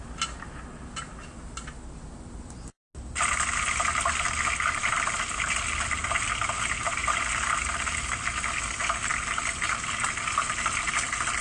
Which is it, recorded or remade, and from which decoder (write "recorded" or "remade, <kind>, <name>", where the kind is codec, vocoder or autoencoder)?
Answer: recorded